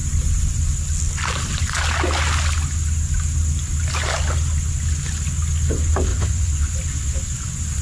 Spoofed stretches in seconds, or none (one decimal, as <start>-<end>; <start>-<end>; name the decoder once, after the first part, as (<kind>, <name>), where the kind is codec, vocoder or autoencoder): 6.1-6.7 (vocoder, Vocos)